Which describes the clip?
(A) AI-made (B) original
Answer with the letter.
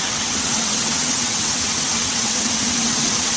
A